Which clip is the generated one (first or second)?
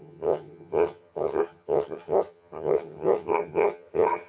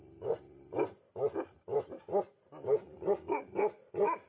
first